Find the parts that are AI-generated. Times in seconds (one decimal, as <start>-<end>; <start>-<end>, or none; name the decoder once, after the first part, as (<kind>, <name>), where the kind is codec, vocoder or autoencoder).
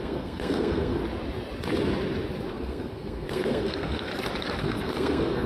0.0-1.0 (codec, SNAC); 2.5-4.1; 4.6-5.5